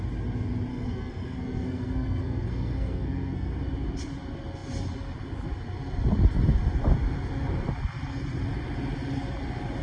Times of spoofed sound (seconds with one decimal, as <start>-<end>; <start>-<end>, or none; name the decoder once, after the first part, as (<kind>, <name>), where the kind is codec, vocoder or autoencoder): 0.7-3.5 (codec, SNAC)